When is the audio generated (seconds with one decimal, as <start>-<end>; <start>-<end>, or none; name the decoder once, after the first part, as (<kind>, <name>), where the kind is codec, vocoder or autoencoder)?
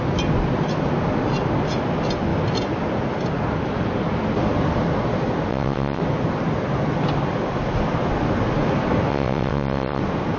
5.5-6.0 (vocoder, WaveNeXt); 9.1-10.0